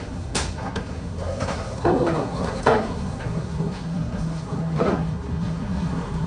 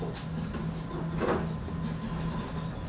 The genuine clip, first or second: second